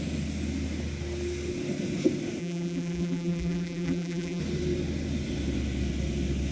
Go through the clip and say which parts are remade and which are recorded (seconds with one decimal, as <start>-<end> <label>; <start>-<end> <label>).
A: 0.0-2.4 recorded; 2.4-4.4 remade; 4.4-6.5 recorded